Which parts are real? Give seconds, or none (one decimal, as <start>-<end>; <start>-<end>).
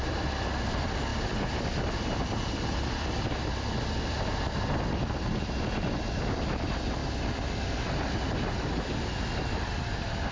0.0-10.3